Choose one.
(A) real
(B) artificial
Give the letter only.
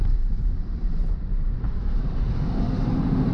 B